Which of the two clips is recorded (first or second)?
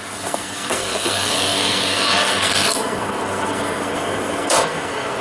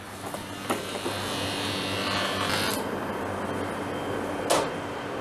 second